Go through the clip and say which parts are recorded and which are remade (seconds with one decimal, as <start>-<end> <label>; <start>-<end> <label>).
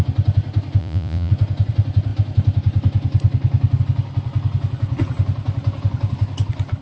0.0-0.8 recorded; 0.8-1.3 remade; 1.3-6.8 recorded